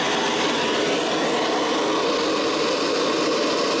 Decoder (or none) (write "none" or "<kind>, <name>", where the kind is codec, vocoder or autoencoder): none